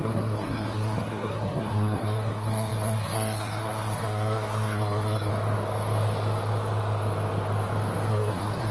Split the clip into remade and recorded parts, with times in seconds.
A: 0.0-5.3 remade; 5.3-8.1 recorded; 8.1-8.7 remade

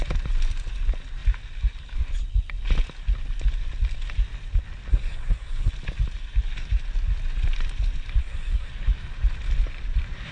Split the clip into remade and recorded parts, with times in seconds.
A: 0.0-4.9 recorded; 4.9-5.7 remade; 5.7-8.2 recorded; 8.2-8.7 remade; 8.7-10.3 recorded

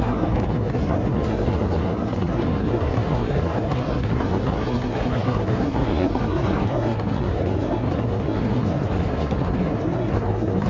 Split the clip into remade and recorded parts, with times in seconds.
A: 0.0-10.7 remade

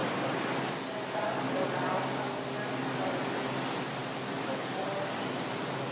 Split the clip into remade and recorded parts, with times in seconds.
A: 0.0-5.9 recorded

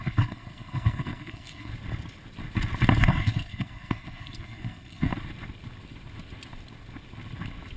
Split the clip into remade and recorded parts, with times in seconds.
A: 0.0-1.7 remade; 1.7-3.0 recorded; 3.0-5.1 remade; 5.1-7.8 recorded

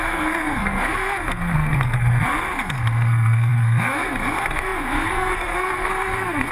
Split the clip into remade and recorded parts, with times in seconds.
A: 0.0-6.5 remade

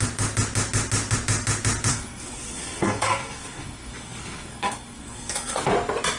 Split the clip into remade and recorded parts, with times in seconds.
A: 0.0-1.9 recorded; 1.9-5.6 remade; 5.6-6.2 recorded